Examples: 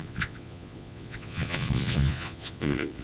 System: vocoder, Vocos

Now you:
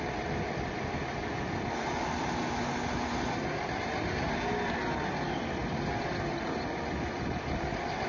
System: none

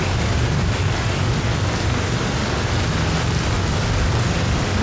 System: none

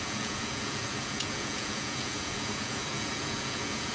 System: vocoder, Vocos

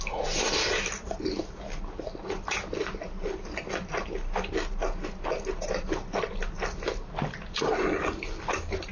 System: none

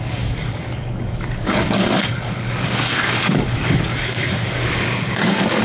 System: codec, DAC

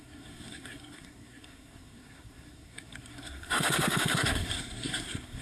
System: codec, SNAC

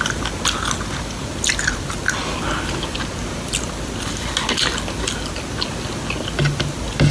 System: none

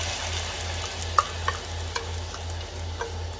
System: none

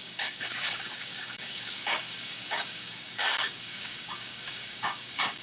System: codec, DAC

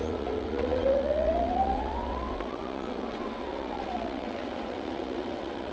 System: vocoder, WaveNeXt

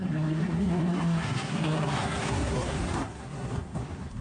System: codec, SNAC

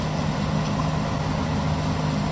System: none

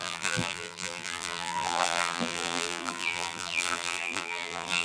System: vocoder, BigVGAN v2